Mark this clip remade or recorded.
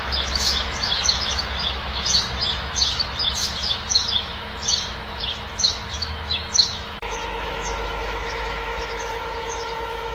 remade